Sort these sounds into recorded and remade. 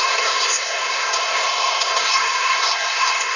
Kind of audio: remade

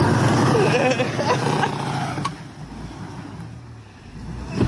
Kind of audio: recorded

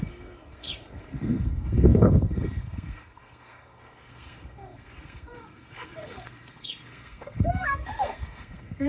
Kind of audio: remade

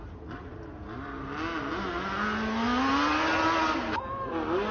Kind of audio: recorded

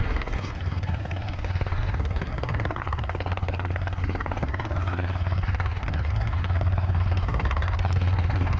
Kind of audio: remade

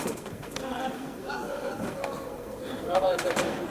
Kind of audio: remade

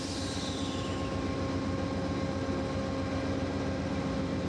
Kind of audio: recorded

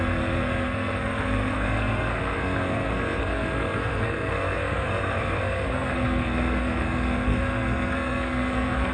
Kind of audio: remade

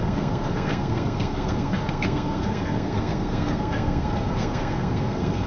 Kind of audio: remade